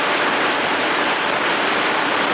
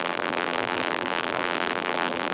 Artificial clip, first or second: second